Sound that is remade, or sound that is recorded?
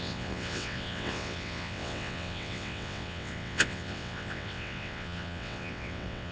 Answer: remade